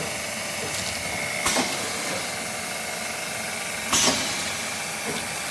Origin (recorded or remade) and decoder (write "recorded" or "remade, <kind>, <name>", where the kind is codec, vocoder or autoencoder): recorded